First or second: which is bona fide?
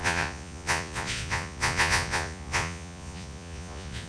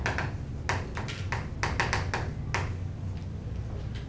second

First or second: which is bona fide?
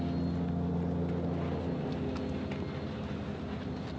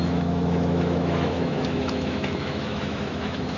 first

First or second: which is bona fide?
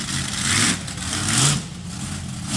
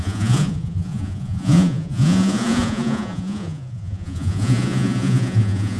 first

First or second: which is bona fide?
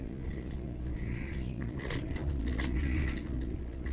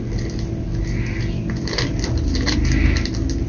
second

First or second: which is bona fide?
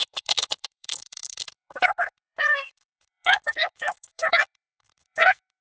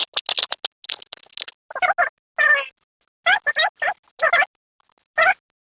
second